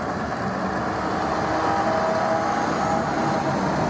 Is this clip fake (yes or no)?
no